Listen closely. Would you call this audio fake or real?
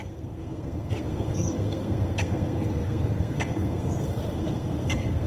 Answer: fake